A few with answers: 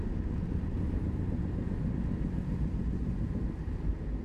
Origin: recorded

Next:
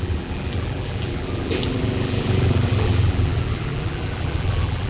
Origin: remade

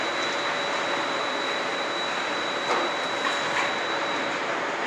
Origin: remade